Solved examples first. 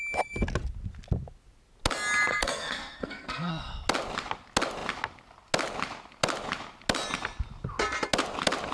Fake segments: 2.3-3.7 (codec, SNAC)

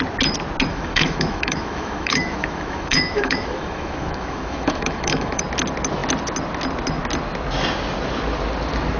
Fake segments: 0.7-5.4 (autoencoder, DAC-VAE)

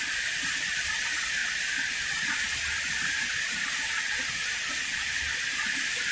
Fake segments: none

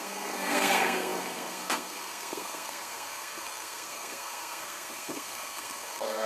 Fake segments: 0.0-6.3 (codec, SNAC)